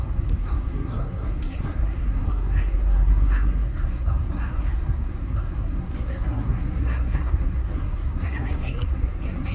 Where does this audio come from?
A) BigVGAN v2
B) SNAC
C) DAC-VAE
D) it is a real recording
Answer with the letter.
B